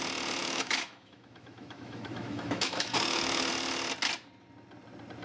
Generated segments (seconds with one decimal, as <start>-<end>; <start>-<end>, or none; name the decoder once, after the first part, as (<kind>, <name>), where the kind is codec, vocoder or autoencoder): 0.4-3.5 (autoencoder, DAC-VAE)